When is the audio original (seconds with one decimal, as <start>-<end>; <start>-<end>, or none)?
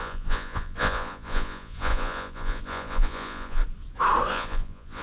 3.6-4.3